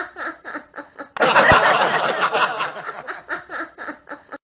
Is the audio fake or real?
real